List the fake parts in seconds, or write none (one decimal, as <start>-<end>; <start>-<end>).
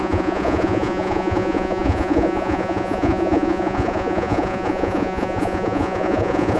0.0-6.6